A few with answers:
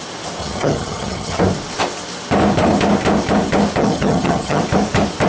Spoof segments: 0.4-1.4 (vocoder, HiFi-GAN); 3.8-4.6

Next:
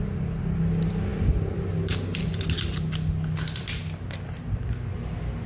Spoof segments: none

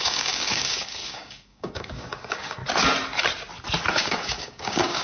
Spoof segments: 0.0-2.6 (codec, DAC); 3.9-5.0

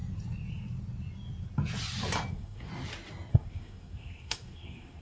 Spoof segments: 2.3-2.7 (codec, SNAC); 3.3-5.0

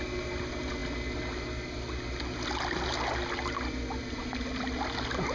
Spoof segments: none

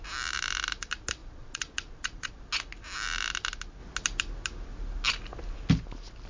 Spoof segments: 1.2-2.3 (vocoder, Vocos)

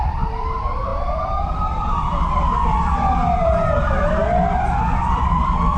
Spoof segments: 0.0-4.2 (vocoder, BigVGAN v2); 5.0-5.8